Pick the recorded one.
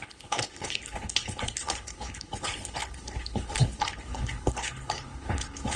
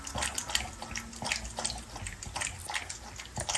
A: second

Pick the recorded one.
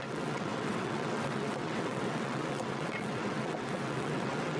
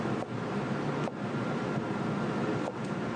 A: second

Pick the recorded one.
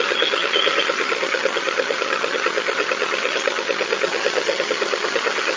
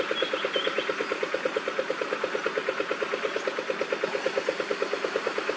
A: second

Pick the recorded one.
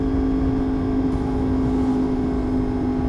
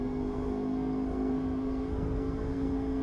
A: first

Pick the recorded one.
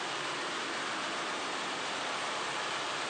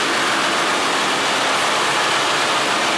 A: second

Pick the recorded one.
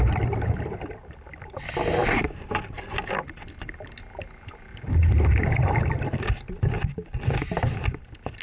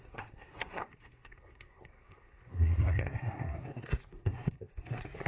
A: first